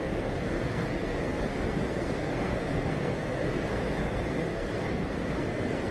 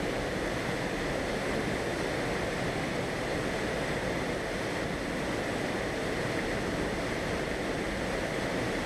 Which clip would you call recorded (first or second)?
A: second